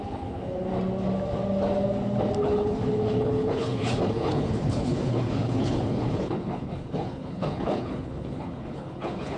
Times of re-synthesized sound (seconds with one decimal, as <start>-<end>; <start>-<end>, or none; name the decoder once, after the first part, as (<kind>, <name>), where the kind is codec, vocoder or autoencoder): 0.0-0.7 (codec, HILCodec); 2.4-9.4